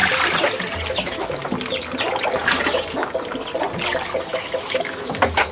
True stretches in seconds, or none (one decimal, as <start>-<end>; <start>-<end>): 0.0-0.9; 1.4-4.3